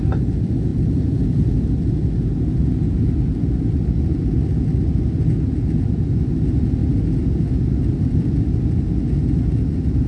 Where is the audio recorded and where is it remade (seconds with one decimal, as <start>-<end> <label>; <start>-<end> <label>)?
0.0-10.1 recorded